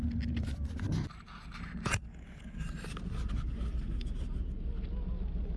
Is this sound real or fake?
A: real